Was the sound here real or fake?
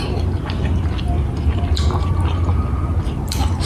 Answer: real